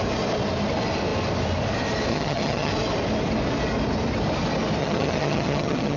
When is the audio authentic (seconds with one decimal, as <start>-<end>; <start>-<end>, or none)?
0.0-2.1; 2.7-4.8